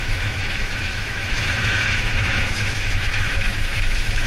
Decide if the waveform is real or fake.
fake